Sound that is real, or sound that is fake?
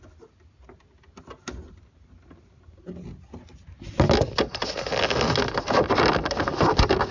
real